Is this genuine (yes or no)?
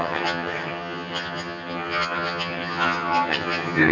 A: no